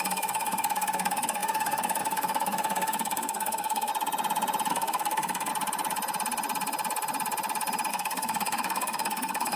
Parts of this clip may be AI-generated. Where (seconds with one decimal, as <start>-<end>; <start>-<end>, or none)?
0.0-3.9; 4.7-5.5; 7.9-9.6